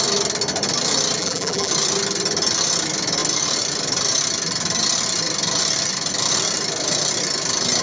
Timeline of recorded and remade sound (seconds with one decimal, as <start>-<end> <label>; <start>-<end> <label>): 0.0-1.2 recorded; 1.2-1.7 remade; 1.7-7.8 recorded